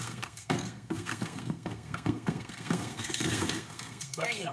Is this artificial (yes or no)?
yes